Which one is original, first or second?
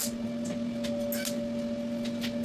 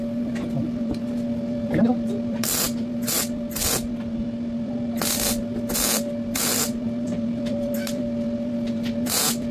first